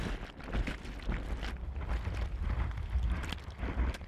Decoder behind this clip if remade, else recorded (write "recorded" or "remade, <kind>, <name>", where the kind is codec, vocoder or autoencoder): recorded